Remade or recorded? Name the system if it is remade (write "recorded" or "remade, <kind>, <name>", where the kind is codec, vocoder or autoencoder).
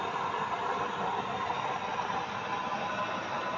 recorded